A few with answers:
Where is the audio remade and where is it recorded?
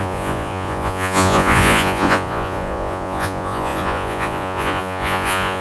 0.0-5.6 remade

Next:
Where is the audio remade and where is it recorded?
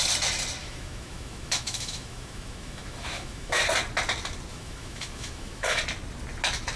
0.0-0.6 recorded; 0.6-3.6 remade; 3.6-4.5 recorded; 4.5-5.8 remade; 5.8-6.8 recorded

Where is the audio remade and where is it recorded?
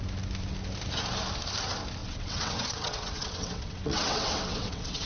0.0-2.0 recorded; 2.0-5.1 remade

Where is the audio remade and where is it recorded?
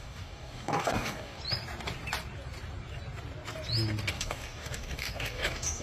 0.0-1.4 remade; 1.4-4.1 recorded; 4.1-5.8 remade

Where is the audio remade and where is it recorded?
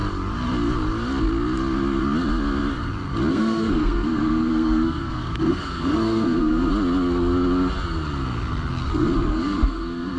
0.0-3.3 recorded; 3.3-6.7 remade; 6.7-8.8 recorded; 8.8-10.2 remade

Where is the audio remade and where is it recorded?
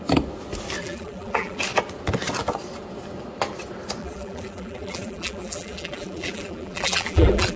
0.0-0.8 recorded; 0.8-1.6 remade; 1.6-4.0 recorded; 4.0-7.6 remade